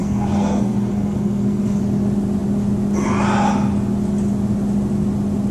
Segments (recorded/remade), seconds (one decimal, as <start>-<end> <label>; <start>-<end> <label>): 0.0-1.8 remade; 1.8-5.5 recorded